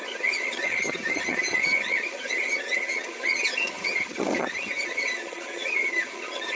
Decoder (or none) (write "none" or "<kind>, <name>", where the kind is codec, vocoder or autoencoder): vocoder, HiFi-GAN